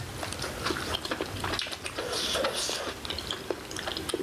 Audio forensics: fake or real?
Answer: real